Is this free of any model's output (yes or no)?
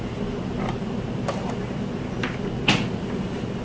yes